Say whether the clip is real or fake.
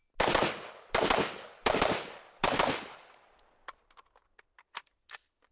real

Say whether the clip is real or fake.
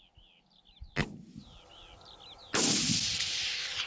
real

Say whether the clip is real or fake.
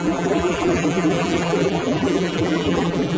fake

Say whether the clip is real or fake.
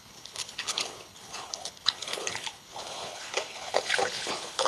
fake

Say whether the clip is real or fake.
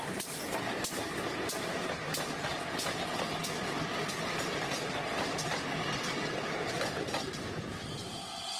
real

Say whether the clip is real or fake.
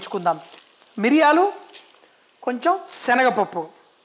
real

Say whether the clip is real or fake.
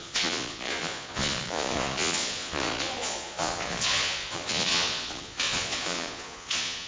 fake